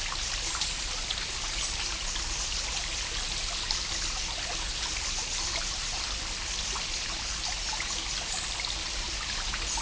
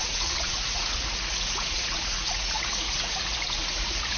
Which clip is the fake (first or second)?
second